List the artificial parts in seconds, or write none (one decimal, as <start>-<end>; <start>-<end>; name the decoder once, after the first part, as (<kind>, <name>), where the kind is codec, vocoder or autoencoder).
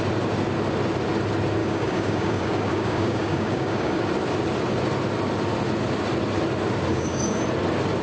1.6-4.0 (codec, DAC); 6.9-7.4